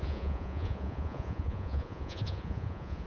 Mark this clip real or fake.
fake